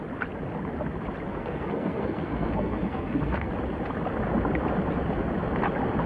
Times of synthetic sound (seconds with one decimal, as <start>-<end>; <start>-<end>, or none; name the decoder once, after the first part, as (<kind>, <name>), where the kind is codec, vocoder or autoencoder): 1.3-3.5 (codec, SNAC)